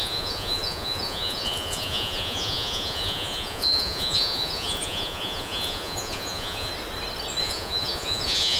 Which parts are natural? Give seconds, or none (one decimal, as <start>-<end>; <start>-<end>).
6.7-7.4